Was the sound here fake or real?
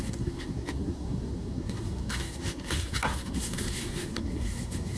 fake